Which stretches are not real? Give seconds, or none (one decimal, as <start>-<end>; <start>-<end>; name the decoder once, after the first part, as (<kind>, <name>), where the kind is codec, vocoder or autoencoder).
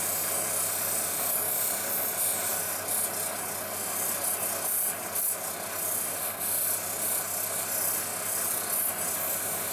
none